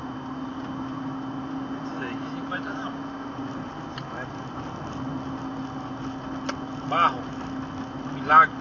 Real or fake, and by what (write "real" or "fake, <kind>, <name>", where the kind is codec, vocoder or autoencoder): real